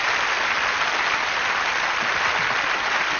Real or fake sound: real